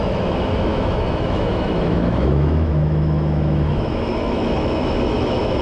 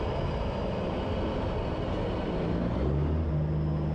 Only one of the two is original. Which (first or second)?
second